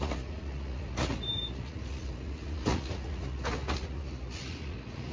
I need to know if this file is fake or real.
fake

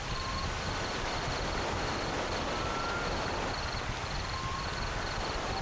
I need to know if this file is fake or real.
real